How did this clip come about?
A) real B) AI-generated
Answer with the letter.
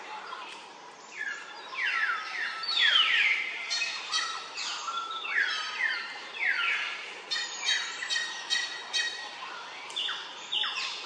B